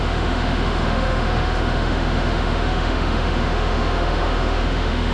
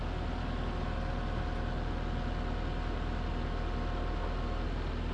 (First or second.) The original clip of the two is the second